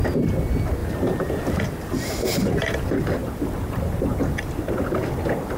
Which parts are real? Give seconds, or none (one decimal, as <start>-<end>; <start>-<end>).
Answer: 0.0-5.6